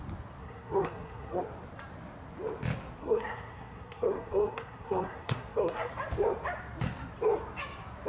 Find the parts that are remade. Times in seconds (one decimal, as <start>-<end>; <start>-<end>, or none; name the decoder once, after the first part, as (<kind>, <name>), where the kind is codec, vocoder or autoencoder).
0.4-1.4 (codec, SNAC); 3.0-5.9